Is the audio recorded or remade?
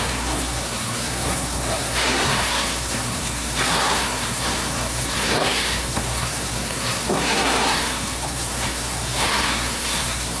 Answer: remade